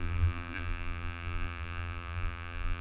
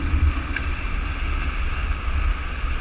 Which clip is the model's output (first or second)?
first